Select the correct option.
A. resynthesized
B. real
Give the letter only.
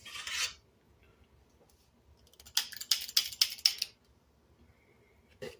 B